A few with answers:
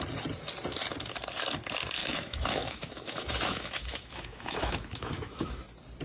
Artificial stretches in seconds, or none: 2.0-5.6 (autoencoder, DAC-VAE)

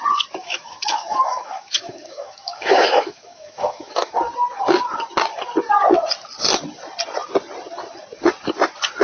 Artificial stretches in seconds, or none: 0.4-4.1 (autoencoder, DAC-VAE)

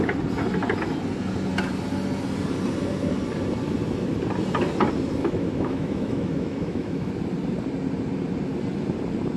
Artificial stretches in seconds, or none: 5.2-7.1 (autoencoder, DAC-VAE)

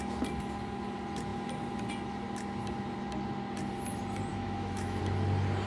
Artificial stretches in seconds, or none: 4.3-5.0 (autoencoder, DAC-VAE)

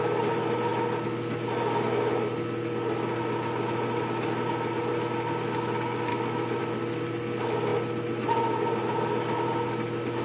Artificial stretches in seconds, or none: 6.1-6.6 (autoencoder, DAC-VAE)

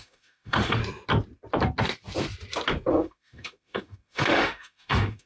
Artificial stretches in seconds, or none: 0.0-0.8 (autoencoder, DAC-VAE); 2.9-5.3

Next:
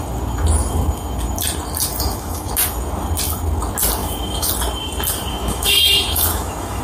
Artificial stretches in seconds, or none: 1.9-2.5 (autoencoder, DAC-VAE); 4.0-4.5; 5.3-6.8

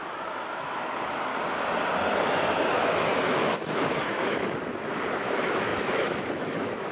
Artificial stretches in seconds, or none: 0.0-1.3 (autoencoder, DAC-VAE); 2.2-6.9